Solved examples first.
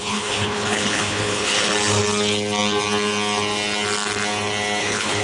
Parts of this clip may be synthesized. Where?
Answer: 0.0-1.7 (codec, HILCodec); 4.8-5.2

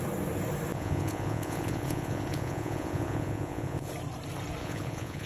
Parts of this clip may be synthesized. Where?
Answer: 0.7-3.9 (vocoder, Vocos); 4.6-5.3

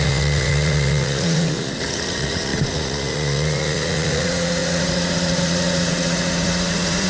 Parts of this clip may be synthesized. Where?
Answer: 0.0-7.1 (vocoder, Vocos)

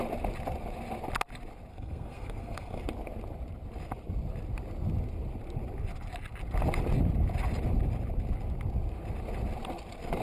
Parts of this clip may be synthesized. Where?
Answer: 1.7-2.8 (codec, SNAC)

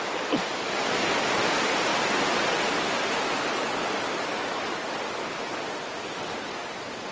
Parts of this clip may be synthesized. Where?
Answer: none